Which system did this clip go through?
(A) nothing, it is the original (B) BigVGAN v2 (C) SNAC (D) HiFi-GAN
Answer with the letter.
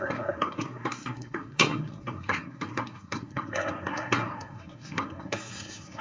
C